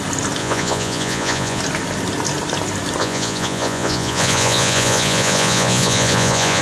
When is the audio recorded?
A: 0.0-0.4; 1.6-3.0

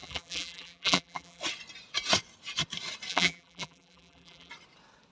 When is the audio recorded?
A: 1.4-3.1; 4.5-5.1

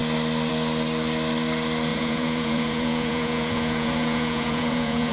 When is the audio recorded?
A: 0.0-1.9

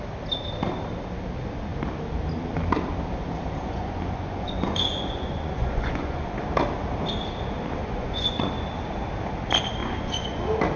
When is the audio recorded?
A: 0.0-3.6; 6.4-7.8; 8.5-9.8; 10.4-10.8

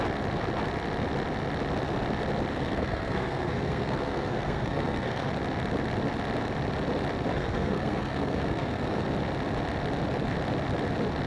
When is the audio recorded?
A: 0.0-2.5; 5.3-7.3; 9.0-11.3

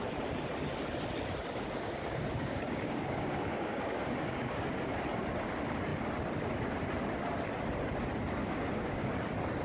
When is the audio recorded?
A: 0.0-1.5; 5.0-8.4; 9.1-9.6